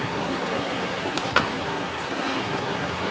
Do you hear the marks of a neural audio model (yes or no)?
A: yes